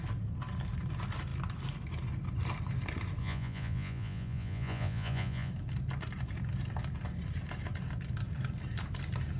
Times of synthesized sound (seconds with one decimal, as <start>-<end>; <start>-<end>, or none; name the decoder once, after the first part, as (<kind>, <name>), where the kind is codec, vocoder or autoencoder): 3.2-5.5 (vocoder, Vocos)